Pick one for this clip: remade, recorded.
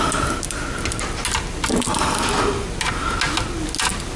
recorded